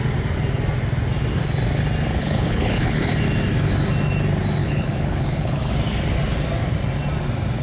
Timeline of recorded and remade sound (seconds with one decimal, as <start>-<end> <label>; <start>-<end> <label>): 0.0-2.2 recorded; 2.2-3.1 remade; 3.1-4.6 recorded; 4.6-5.7 remade; 5.7-7.6 recorded

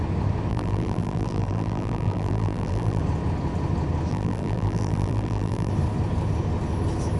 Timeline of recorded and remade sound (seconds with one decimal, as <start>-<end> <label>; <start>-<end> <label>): 0.0-0.5 recorded; 0.5-3.0 remade; 3.0-4.1 recorded; 4.1-5.7 remade; 5.7-7.2 recorded